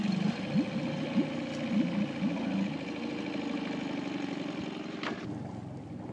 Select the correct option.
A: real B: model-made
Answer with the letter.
A